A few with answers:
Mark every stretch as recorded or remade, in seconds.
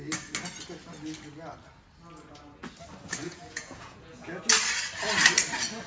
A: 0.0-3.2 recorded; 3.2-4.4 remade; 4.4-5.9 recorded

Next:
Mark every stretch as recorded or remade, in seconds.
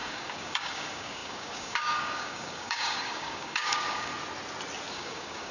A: 0.0-4.1 remade; 4.1-4.9 recorded; 4.9-5.5 remade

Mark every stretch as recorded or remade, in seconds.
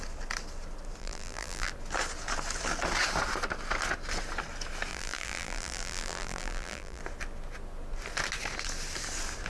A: 0.0-1.0 recorded; 1.0-1.7 remade; 1.7-4.9 recorded; 4.9-7.0 remade; 7.0-9.5 recorded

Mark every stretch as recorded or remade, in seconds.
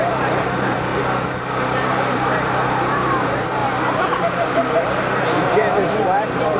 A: 0.0-0.9 remade; 0.9-1.6 recorded; 1.6-3.6 remade; 3.6-4.4 recorded; 4.4-6.6 remade